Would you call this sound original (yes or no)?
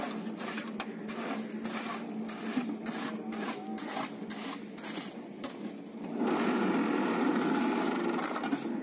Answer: yes